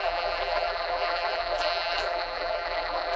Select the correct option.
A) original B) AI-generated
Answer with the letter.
B